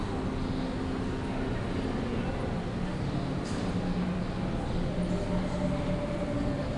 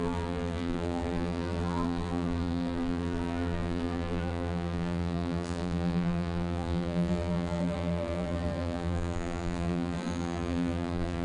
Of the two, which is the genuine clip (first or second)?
first